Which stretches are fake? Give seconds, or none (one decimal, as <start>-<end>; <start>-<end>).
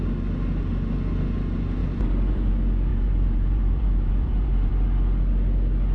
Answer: 1.8-2.5; 2.9-4.7